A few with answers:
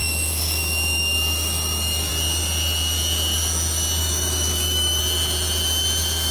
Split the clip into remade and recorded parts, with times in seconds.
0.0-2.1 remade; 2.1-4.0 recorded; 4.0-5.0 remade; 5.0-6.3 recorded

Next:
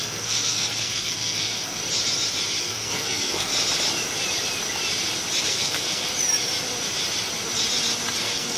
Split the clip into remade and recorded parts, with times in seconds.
0.0-1.8 remade; 1.8-2.6 recorded; 2.6-3.5 remade; 3.5-5.4 recorded; 5.4-6.0 remade; 6.0-8.2 recorded; 8.2-8.6 remade

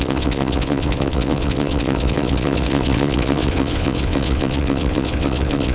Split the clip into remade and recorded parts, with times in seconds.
0.0-5.7 remade

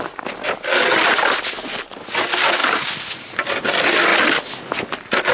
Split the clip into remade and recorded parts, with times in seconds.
0.0-5.3 recorded

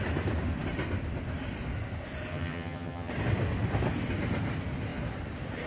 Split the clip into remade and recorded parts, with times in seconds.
0.0-2.3 recorded; 2.3-3.1 remade; 3.1-5.7 recorded

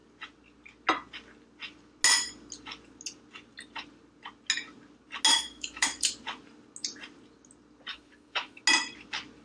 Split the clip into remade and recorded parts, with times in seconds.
0.0-5.3 recorded; 5.3-6.1 remade; 6.1-7.9 recorded; 7.9-8.6 remade; 8.6-9.4 recorded

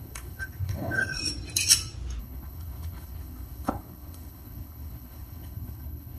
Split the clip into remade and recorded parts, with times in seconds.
0.0-1.2 remade; 1.2-2.2 recorded; 2.2-6.2 remade